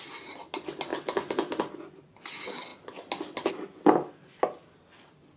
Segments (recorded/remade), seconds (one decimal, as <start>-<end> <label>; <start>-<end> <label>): 0.0-5.4 recorded